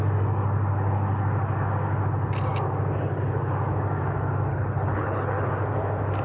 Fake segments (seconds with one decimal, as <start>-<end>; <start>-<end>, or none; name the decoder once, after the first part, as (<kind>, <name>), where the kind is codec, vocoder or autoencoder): 4.5-5.5 (codec, HILCodec)